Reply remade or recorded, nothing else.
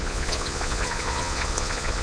remade